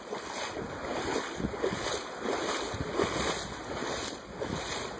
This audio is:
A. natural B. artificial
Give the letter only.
A